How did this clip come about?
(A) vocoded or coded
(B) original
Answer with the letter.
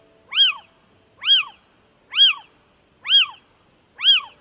B